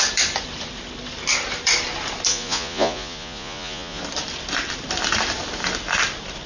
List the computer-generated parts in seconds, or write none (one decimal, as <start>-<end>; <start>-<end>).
2.3-4.0